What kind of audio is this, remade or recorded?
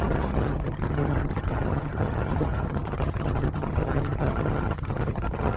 remade